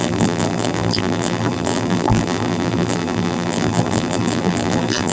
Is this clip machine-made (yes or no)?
yes